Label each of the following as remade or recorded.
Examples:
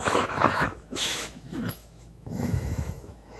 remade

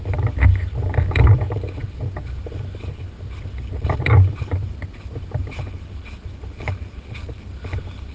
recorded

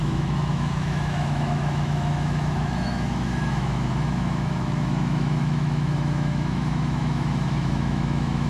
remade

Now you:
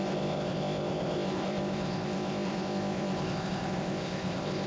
remade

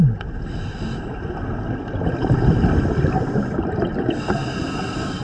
recorded